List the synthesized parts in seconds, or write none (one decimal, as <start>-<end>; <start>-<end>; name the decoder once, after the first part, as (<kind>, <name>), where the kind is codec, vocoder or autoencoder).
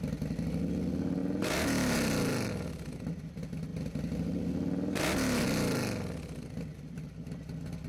3.7-4.5 (vocoder, BigVGAN v2)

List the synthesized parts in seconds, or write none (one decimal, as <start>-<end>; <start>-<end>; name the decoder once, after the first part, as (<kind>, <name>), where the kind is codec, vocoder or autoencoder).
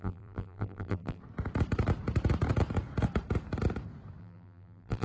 0.0-1.2 (vocoder, BigVGAN v2); 4.2-5.0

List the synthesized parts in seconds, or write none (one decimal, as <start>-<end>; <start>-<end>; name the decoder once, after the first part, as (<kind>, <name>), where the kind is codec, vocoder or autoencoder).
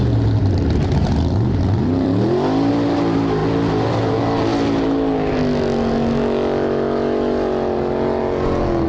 0.4-2.7 (vocoder, BigVGAN v2)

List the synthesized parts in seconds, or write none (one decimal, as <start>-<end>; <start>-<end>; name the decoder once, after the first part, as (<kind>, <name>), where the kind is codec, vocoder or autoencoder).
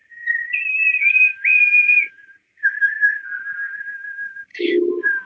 4.5-5.3 (vocoder, BigVGAN v2)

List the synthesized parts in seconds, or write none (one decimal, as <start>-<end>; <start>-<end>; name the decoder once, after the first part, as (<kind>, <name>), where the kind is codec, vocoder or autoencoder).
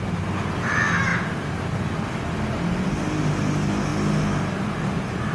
none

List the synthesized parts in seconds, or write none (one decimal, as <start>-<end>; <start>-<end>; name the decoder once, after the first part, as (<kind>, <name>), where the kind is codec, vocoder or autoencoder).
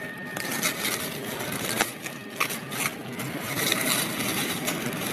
0.0-0.5 (vocoder, BigVGAN v2); 3.3-5.1